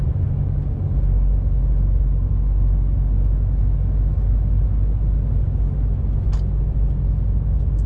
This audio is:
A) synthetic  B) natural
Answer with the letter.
B